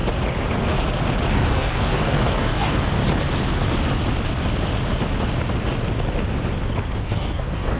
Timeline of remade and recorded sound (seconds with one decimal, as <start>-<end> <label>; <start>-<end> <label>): 0.0-1.3 recorded; 1.3-3.0 remade; 3.0-7.0 recorded; 7.0-7.8 remade